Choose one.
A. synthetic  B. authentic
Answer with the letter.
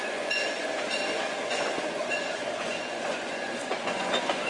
A